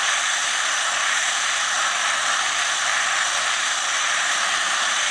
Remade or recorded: remade